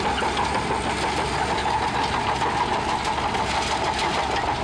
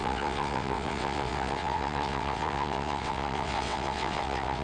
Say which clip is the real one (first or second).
first